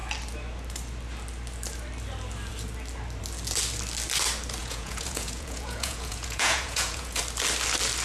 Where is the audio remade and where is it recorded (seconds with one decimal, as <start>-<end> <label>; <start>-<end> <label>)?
0.0-4.6 recorded; 4.6-7.2 remade; 7.2-8.0 recorded